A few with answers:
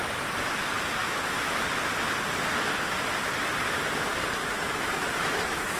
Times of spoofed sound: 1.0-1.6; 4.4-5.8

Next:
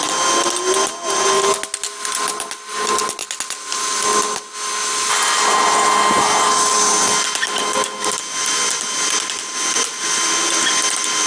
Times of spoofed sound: none

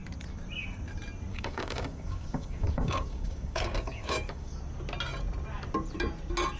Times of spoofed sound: 1.3-4.5

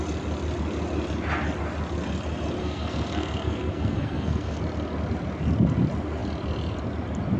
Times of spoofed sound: 2.6-4.6

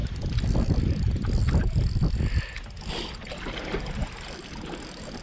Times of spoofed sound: none

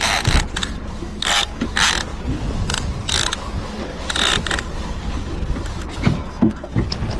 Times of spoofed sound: 1.0-1.6; 6.2-6.7

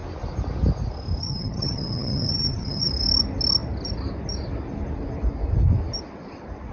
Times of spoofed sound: 1.2-2.9

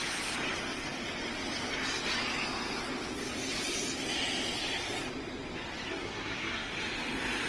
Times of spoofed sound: 5.9-6.7